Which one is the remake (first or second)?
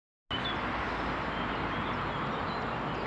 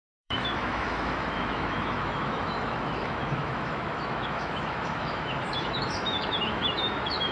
second